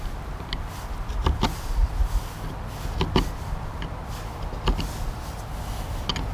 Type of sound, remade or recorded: recorded